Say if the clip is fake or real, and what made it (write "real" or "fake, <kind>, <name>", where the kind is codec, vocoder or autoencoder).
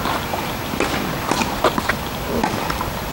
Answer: real